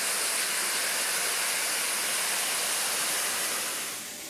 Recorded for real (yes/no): yes